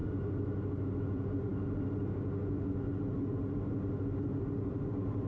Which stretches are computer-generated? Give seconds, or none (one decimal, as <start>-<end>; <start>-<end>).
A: 1.0-1.5; 4.7-5.3